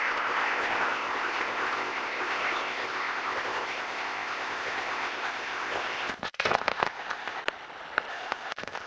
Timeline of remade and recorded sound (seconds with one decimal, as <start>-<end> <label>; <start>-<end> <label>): 0.0-7.4 remade; 7.4-8.1 recorded; 8.1-8.9 remade